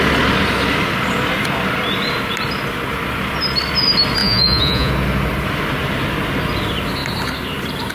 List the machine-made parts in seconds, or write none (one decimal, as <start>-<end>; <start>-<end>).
4.2-4.9